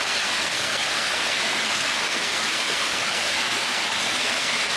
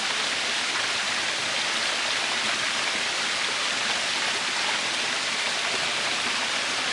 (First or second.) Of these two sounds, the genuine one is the second